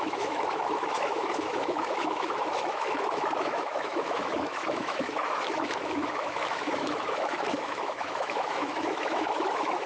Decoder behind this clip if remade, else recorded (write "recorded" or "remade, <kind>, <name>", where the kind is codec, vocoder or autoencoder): remade, autoencoder, DAC-VAE